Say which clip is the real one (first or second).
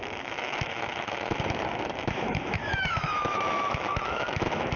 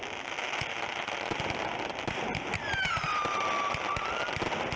second